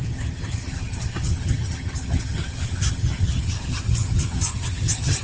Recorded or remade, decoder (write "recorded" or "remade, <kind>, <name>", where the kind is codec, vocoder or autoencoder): remade, vocoder, HiFi-GAN